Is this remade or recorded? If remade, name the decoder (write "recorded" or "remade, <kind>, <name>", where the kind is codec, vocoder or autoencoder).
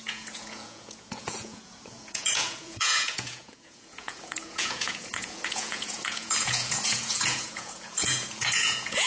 remade, vocoder, Vocos